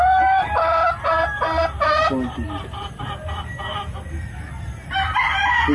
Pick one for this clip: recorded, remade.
recorded